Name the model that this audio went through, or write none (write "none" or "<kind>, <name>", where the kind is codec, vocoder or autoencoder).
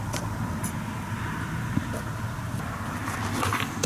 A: none